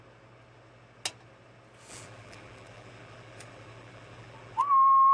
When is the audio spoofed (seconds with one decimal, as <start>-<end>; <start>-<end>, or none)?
1.9-4.6